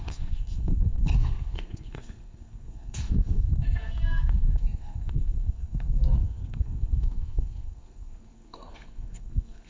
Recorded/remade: remade